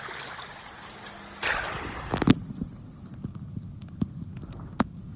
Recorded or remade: recorded